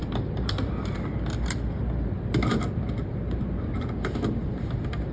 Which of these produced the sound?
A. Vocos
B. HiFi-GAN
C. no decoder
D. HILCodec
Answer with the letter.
C